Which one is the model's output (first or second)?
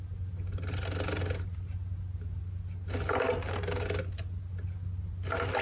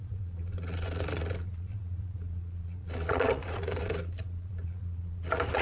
second